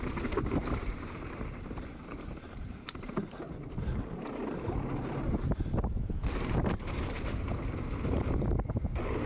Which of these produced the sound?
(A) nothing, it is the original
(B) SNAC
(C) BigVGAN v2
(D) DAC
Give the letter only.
C